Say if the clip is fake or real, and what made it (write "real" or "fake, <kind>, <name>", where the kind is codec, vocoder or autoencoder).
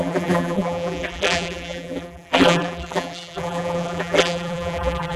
fake, vocoder, BigVGAN v2